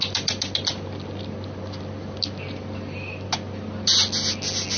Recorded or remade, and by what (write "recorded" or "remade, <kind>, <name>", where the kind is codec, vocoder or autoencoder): recorded